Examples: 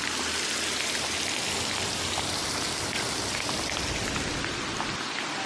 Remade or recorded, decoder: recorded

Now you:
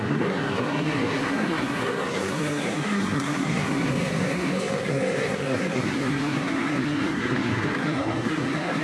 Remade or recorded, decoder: remade, codec, SNAC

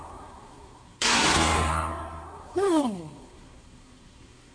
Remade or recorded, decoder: remade, codec, SNAC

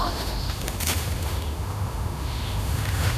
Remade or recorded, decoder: remade, autoencoder, DAC-VAE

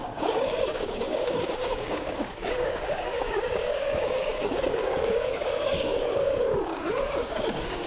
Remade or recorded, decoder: remade, codec, DAC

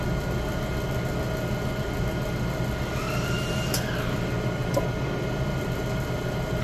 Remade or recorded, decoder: recorded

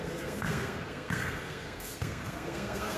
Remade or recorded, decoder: remade, codec, SNAC